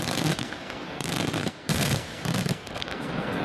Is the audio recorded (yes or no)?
no